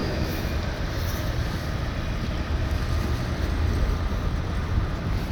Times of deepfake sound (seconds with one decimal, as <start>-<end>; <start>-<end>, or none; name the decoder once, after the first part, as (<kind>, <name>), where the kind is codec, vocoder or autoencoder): 0.0-0.5 (autoencoder, DAC-VAE)